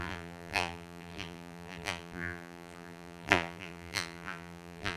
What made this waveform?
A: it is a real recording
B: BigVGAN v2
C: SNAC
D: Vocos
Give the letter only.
B